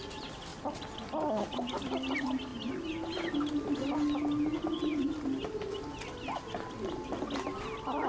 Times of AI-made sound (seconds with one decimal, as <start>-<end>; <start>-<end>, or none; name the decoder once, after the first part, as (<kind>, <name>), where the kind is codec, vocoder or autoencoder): 0.5-1.4 (vocoder, BigVGAN v2)